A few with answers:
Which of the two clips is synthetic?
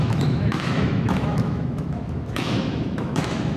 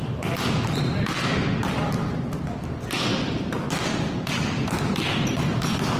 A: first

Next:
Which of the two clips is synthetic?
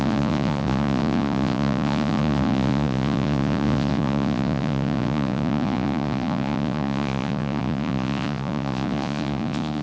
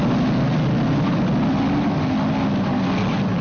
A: first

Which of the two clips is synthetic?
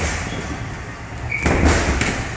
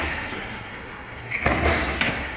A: second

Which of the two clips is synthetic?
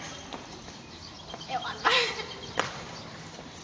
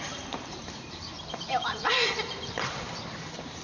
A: second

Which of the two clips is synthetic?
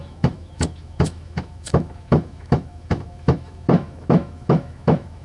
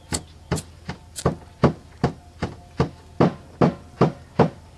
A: first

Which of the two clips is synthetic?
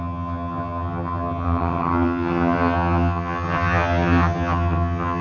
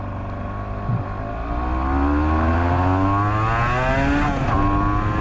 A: first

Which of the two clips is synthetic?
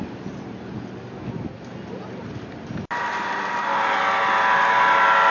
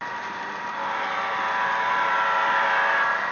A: second